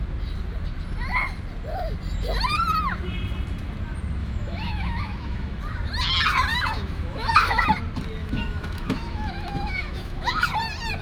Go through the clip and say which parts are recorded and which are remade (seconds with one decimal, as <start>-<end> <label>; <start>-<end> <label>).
0.0-4.2 recorded; 4.2-5.6 remade; 5.6-6.5 recorded; 6.5-7.7 remade; 7.7-8.2 recorded; 8.2-10.3 remade; 10.3-11.0 recorded